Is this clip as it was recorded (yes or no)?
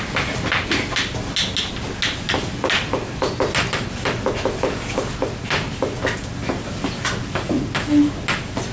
yes